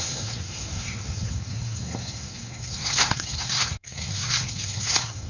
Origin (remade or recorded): remade